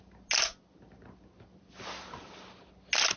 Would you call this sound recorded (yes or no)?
yes